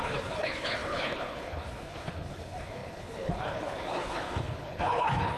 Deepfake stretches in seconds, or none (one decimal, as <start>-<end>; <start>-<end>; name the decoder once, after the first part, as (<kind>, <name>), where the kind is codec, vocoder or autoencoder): 0.0-5.4 (codec, HILCodec)